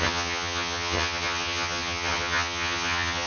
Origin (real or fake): fake